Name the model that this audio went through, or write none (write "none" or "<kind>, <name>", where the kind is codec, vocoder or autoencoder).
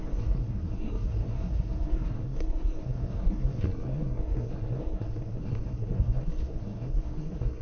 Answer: codec, SNAC